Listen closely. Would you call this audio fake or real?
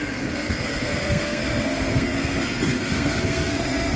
fake